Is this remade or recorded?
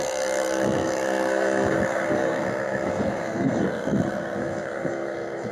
remade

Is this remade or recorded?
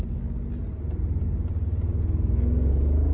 recorded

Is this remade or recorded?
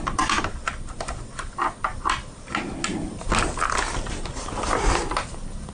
recorded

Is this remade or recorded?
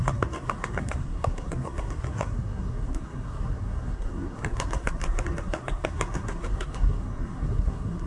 remade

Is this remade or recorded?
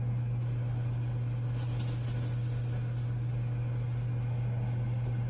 recorded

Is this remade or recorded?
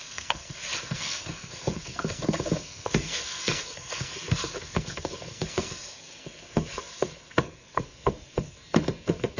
remade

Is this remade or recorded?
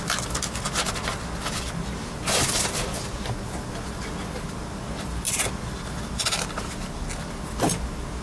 recorded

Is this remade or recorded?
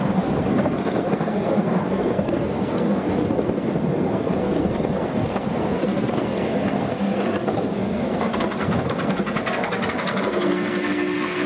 remade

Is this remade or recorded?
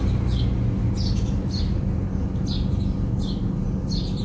recorded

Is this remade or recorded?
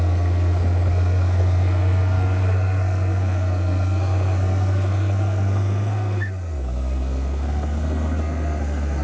remade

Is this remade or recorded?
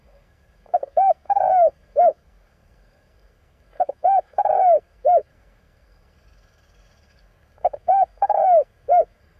remade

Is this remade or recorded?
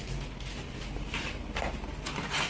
recorded